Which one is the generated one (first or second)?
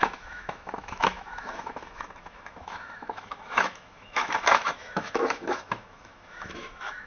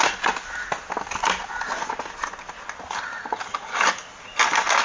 first